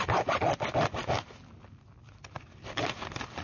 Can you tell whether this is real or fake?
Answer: real